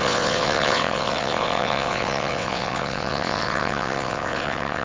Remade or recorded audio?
remade